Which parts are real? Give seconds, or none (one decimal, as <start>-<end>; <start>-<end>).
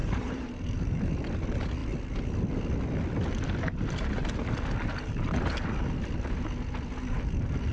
1.1-7.7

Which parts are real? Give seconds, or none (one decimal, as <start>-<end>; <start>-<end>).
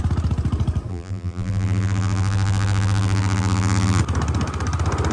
0.0-0.9; 4.0-5.1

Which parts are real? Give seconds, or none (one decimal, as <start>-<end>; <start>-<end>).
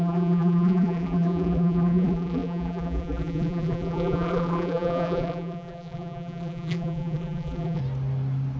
7.8-8.6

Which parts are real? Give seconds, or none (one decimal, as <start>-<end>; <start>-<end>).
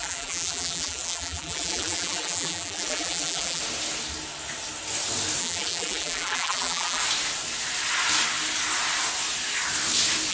3.6-5.4; 7.0-10.3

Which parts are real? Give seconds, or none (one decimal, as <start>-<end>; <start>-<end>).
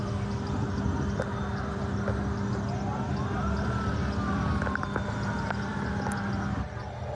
0.0-7.1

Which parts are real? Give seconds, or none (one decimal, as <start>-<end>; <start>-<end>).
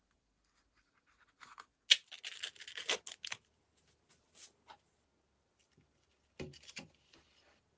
1.7-6.3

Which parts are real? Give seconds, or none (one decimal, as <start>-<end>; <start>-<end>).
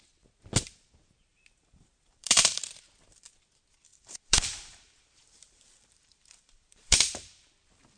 0.0-1.3; 2.7-3.9; 7.5-8.0